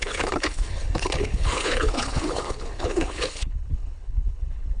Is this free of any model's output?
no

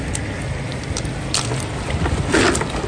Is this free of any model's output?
yes